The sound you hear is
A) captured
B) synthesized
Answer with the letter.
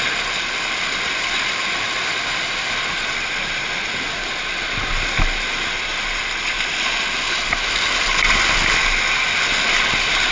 A